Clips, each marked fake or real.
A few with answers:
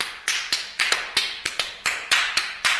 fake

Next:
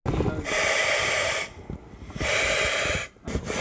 real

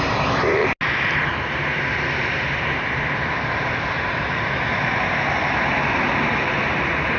real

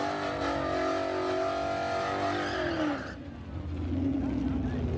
real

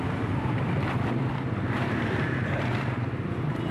fake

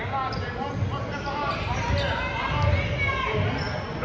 real